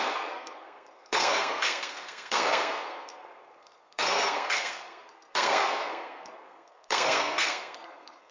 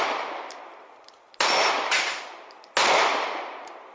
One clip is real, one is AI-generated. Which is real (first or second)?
second